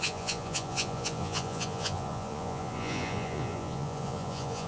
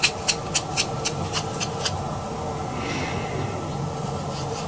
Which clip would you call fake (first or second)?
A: first